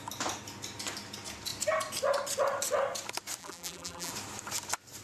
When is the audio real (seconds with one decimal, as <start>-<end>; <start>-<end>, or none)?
0.0-3.4; 4.1-5.0